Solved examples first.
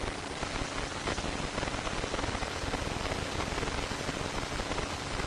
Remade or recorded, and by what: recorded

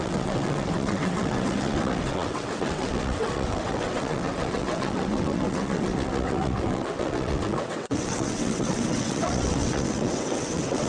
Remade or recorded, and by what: remade, vocoder, WaveNeXt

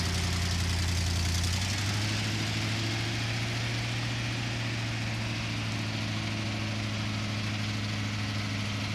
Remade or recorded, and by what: recorded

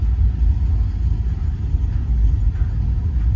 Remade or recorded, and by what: recorded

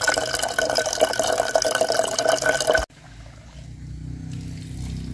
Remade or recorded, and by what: recorded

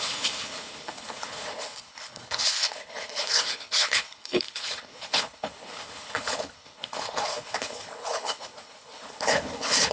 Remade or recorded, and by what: remade, codec, HILCodec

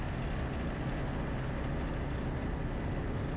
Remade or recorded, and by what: recorded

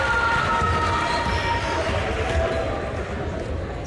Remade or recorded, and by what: recorded